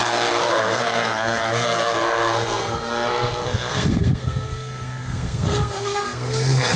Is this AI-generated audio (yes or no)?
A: yes